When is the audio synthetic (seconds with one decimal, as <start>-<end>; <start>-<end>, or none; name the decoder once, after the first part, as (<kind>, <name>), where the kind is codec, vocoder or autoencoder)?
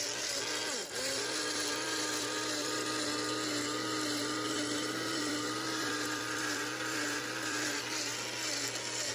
0.6-2.9 (vocoder, BigVGAN v2); 4.2-7.8